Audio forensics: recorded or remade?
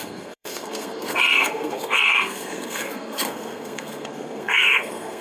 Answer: remade